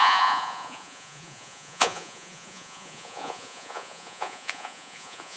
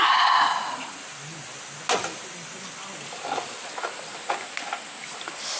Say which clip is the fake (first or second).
first